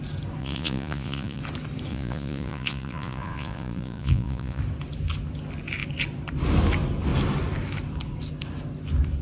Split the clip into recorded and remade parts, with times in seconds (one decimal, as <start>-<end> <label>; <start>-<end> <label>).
0.0-0.4 recorded; 0.4-1.4 remade; 1.4-1.9 recorded; 1.9-4.6 remade; 4.6-9.2 recorded